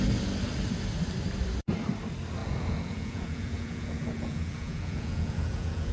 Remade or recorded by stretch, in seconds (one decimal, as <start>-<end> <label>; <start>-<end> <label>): 0.0-2.4 recorded; 2.4-5.9 remade